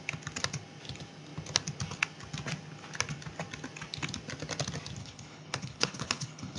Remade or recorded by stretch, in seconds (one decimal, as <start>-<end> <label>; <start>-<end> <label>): 0.0-5.0 recorded; 5.0-6.6 remade